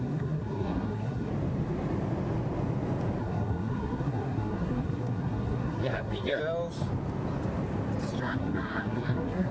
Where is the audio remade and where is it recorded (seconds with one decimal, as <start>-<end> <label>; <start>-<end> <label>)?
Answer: 0.0-1.3 remade; 1.3-3.2 recorded; 3.2-6.4 remade; 6.4-8.2 recorded; 8.2-9.5 remade